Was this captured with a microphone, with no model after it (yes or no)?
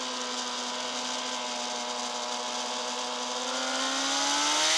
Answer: yes